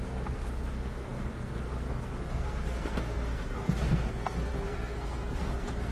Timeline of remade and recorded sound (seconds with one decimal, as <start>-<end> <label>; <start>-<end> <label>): 0.0-5.9 remade